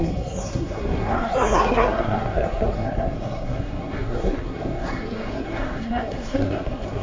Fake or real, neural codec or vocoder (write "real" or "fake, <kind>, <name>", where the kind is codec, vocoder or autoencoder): fake, codec, SNAC